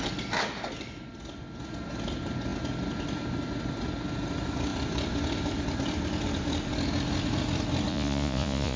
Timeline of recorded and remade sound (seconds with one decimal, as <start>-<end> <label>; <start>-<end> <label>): 0.0-7.9 recorded; 7.9-8.8 remade